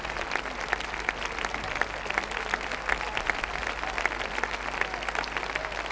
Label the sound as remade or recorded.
recorded